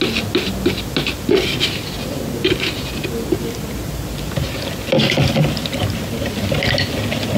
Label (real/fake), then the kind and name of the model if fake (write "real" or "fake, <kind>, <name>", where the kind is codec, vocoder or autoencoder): real